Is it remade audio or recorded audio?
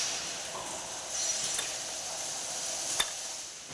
recorded